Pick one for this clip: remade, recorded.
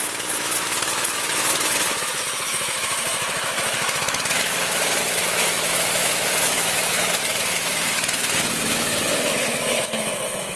remade